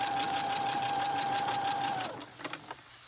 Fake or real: real